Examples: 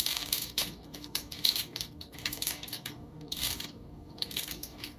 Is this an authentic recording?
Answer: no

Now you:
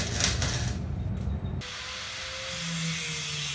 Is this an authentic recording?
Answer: yes